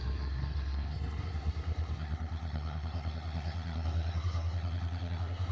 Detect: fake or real fake